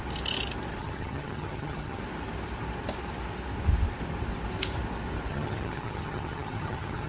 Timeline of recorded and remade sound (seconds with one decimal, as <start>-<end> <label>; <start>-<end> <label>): 0.0-0.8 recorded; 0.8-2.0 remade; 2.0-5.3 recorded; 5.3-7.1 remade